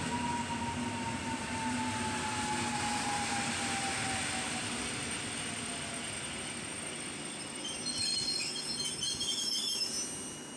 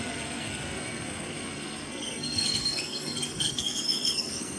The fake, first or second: second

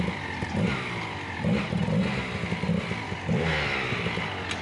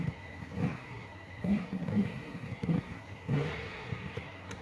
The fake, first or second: second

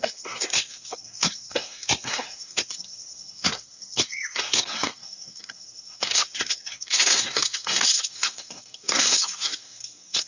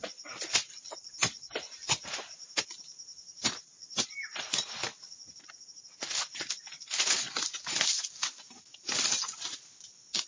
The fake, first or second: first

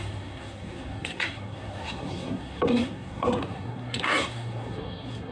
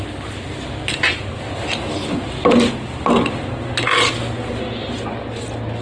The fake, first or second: first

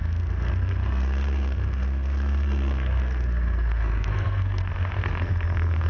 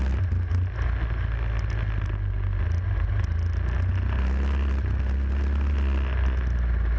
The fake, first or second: first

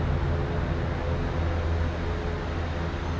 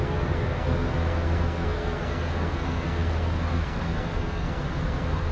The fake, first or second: second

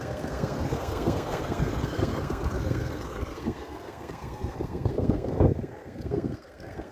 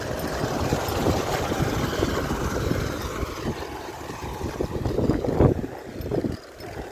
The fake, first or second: first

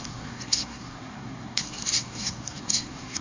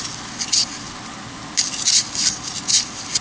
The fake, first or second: first